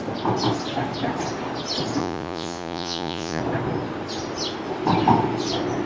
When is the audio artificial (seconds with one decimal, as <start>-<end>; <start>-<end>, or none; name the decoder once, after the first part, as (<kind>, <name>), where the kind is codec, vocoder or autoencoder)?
2.0-3.4 (vocoder, Vocos)